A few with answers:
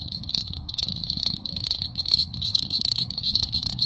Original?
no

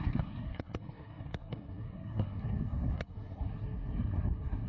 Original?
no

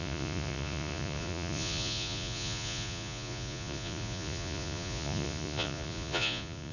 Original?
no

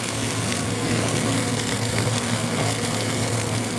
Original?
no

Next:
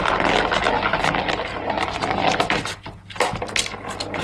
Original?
yes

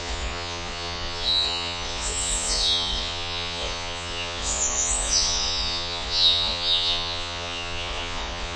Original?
no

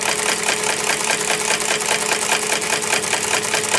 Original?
yes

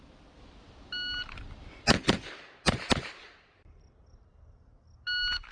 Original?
yes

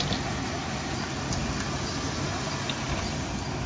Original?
yes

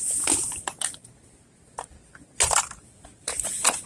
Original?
no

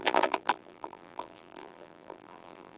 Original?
no